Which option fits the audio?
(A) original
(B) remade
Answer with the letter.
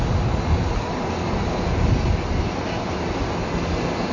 A